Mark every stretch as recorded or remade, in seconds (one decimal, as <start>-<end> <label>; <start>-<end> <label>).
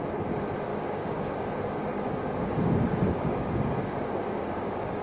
0.0-0.7 recorded; 0.7-1.3 remade; 1.3-1.9 recorded; 1.9-5.0 remade